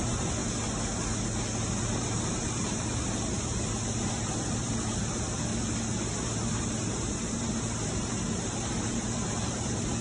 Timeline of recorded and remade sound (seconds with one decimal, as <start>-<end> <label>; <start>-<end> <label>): 0.0-0.4 remade; 0.4-1.9 recorded; 1.9-5.5 remade; 5.5-6.6 recorded; 6.6-10.0 remade

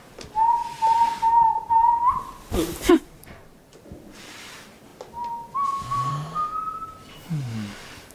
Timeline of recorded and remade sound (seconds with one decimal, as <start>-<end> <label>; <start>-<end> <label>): 0.0-0.6 remade; 0.6-2.9 recorded; 2.9-4.9 remade; 4.9-5.9 recorded; 5.9-8.1 remade

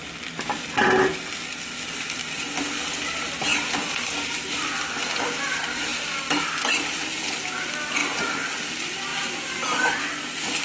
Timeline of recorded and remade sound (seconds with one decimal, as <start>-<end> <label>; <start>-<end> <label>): 0.0-9.1 recorded; 9.1-9.9 remade; 9.9-10.6 recorded